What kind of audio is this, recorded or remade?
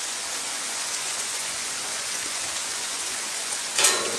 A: remade